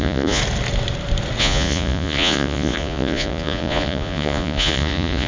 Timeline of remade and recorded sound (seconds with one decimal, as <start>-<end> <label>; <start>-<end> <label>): 0.0-0.4 remade; 0.4-1.4 recorded; 1.4-5.3 remade